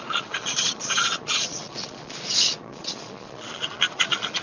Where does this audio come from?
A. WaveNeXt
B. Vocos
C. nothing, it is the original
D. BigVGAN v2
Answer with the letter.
B